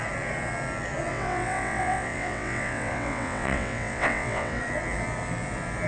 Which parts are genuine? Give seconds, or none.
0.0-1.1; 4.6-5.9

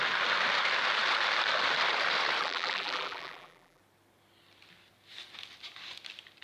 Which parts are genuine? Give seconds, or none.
0.0-2.4; 3.8-6.4

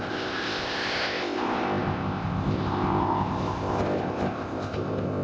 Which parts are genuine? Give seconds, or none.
none